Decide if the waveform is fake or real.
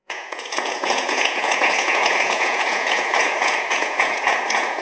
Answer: fake